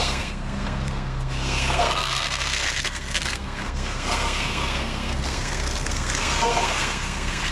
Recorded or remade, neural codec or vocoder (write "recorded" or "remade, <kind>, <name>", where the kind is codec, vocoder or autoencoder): remade, codec, SNAC